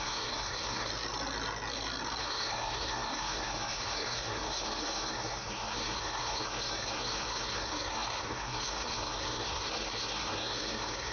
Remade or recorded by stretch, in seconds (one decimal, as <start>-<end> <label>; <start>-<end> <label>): 0.0-0.9 remade; 0.9-2.2 recorded; 2.2-11.1 remade

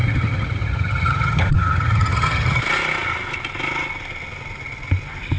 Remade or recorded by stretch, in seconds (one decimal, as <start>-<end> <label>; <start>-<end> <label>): 0.0-2.6 remade; 2.6-5.4 recorded

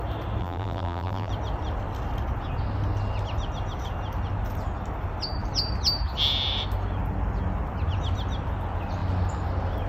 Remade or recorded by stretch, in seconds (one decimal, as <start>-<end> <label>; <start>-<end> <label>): 0.0-0.4 recorded; 0.4-1.3 remade; 1.3-9.9 recorded

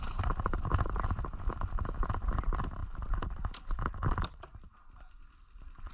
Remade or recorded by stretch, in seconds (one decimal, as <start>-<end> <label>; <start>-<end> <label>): 0.0-5.9 recorded